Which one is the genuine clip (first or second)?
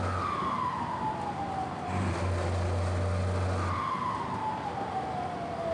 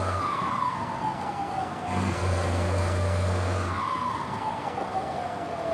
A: first